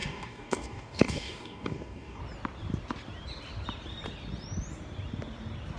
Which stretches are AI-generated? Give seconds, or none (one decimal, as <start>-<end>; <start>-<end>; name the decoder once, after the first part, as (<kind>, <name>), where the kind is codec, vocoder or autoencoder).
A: 0.0-2.2 (codec, DAC)